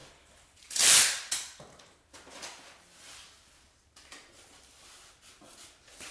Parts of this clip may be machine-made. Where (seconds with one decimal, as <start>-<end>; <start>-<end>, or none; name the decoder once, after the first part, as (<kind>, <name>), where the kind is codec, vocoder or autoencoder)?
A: 0.0-1.3 (vocoder, BigVGAN v2)